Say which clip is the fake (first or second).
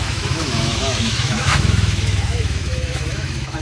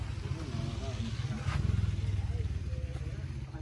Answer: first